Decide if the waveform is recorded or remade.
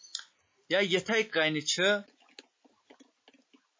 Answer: recorded